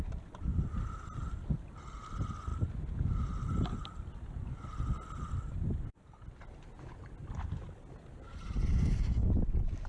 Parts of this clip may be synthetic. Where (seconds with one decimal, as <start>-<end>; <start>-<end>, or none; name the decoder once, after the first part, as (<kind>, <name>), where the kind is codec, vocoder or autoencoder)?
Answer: 8.7-9.3 (codec, SNAC)